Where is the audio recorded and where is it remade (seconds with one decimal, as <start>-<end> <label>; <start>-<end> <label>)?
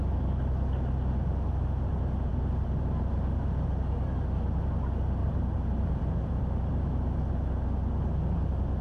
0.0-5.2 recorded; 5.2-6.4 remade; 6.4-8.8 recorded